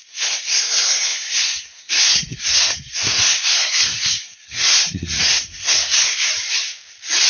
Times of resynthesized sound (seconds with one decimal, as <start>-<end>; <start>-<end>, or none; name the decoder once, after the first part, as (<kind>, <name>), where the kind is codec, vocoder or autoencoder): 0.0-6.3 (codec, SNAC)